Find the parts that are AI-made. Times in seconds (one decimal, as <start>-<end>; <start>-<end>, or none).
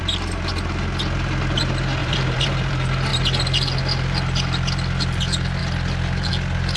2.0-2.7; 3.1-3.8